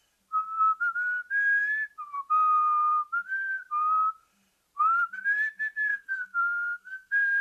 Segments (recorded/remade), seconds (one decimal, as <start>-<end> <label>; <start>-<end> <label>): 0.0-5.9 recorded; 5.9-7.4 remade